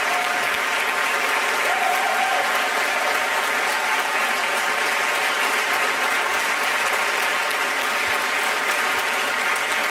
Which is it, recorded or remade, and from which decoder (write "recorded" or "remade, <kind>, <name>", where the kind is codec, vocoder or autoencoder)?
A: recorded